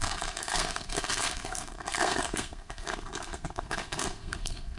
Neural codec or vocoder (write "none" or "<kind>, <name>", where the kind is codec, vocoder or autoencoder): codec, SNAC